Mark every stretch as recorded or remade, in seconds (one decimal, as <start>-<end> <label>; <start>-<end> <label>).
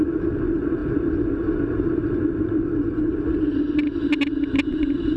0.0-5.2 recorded